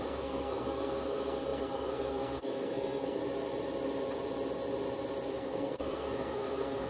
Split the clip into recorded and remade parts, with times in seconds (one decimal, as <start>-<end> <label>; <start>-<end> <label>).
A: 0.0-3.2 remade; 3.2-5.3 recorded; 5.3-6.9 remade